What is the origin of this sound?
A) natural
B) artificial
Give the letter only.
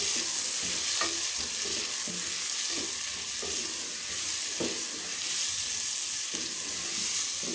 A